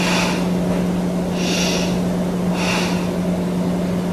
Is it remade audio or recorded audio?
recorded